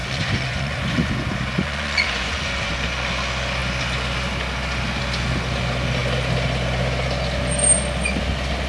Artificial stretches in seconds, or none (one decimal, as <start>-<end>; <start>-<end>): 0.0-1.1; 1.6-2.7